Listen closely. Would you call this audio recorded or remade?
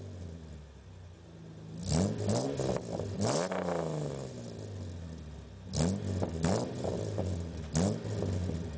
recorded